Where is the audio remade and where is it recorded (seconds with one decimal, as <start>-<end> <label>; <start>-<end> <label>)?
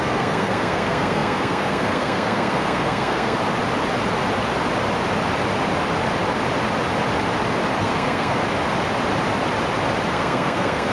0.0-3.4 remade; 3.4-7.8 recorded; 7.8-8.4 remade; 8.4-10.1 recorded; 10.1-10.9 remade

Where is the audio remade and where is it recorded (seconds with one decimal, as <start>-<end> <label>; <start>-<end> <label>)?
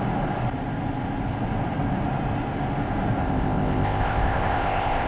0.0-3.2 recorded; 3.2-5.1 remade